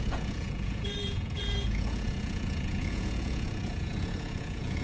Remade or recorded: remade